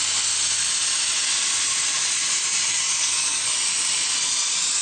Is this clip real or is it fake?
real